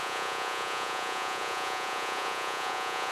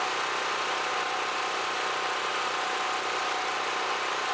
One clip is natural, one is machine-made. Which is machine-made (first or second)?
first